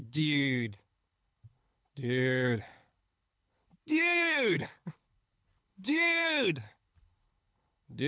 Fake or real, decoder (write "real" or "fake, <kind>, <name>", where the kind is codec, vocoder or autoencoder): fake, codec, HILCodec